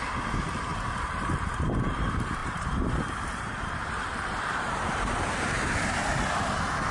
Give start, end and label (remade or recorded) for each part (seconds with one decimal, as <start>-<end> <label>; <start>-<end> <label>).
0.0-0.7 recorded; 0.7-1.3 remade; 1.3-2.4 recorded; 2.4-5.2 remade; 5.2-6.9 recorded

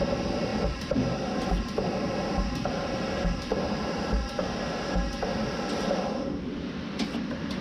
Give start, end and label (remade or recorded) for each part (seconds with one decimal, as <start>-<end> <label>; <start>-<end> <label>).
0.0-0.5 recorded; 0.5-4.6 remade; 4.6-7.6 recorded

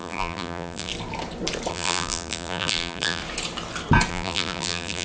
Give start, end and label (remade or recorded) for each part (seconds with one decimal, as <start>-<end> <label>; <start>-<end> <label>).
0.0-0.9 remade; 0.9-1.7 recorded; 1.7-3.2 remade; 3.2-4.1 recorded; 4.1-5.0 remade

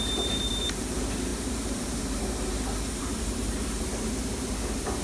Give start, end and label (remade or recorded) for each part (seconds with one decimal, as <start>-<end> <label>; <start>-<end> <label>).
0.0-5.0 remade

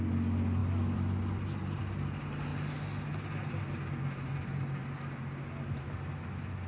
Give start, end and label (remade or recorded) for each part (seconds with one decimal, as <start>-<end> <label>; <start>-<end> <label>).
0.0-0.6 recorded; 0.6-1.8 remade; 1.8-6.7 recorded

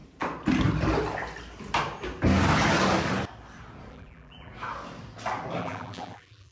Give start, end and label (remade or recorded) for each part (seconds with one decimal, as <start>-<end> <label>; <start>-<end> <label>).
0.0-3.9 recorded; 3.9-4.5 remade; 4.5-5.6 recorded; 5.6-6.5 remade